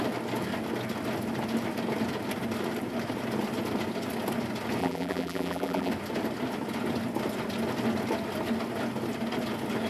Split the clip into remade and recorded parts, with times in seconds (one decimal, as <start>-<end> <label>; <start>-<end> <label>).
0.0-4.8 recorded; 4.8-5.9 remade; 5.9-9.9 recorded